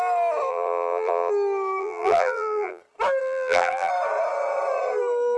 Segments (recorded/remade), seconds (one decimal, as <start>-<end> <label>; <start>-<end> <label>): 0.0-0.5 recorded; 0.5-1.3 remade; 1.3-1.8 recorded; 1.8-2.8 remade; 2.8-3.2 recorded; 3.2-3.9 remade; 3.9-5.4 recorded